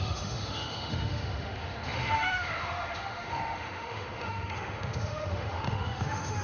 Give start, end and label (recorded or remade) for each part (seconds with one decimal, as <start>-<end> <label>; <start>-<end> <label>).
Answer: 0.0-6.4 remade